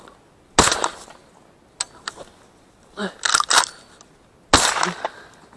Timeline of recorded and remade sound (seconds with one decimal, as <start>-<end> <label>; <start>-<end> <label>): 0.0-5.6 recorded